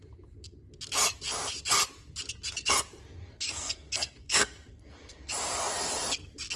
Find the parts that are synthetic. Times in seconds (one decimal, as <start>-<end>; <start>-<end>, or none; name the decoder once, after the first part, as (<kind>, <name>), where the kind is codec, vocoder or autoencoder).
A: 3.2-5.3 (codec, SNAC)